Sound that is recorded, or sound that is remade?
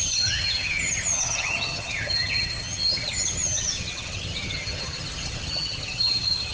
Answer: remade